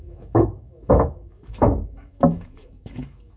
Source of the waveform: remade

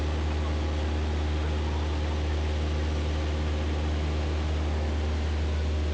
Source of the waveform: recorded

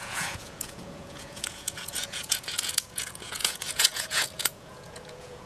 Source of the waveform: remade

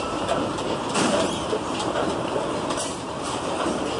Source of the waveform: remade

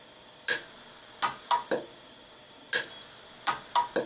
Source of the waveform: recorded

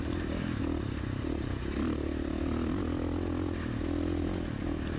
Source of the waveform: recorded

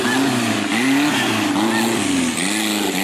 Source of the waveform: recorded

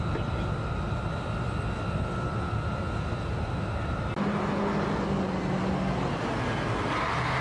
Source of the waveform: recorded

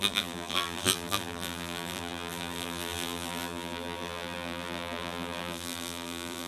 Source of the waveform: remade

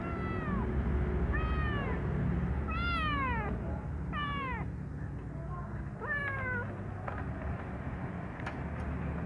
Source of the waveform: recorded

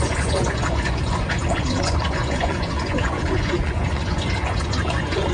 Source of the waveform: remade